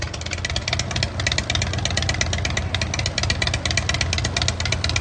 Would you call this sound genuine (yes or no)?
yes